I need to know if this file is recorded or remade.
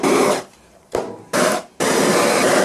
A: remade